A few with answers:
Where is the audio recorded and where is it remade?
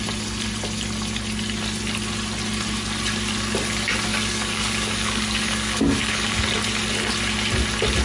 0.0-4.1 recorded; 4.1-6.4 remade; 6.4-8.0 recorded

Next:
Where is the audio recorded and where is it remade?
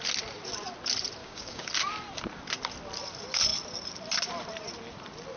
0.0-1.2 recorded; 1.2-1.7 remade; 1.7-5.4 recorded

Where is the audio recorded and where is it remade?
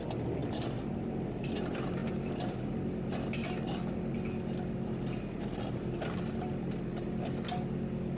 0.0-8.2 recorded